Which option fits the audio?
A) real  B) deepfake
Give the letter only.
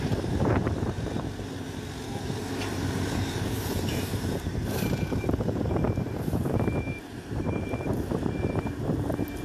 B